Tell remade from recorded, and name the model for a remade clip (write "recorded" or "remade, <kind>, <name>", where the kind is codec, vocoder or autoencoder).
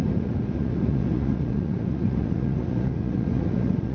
remade, vocoder, Vocos